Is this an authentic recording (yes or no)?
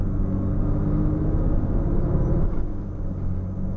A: yes